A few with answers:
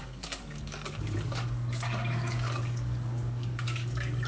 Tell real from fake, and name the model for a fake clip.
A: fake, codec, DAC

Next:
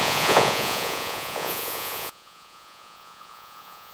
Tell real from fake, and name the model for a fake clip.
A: fake, vocoder, Vocos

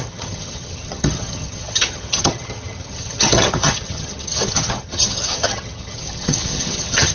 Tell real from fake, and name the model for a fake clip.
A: fake, vocoder, HiFi-GAN